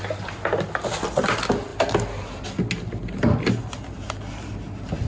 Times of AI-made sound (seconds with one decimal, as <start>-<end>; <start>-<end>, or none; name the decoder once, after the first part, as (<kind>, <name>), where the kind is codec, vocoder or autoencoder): none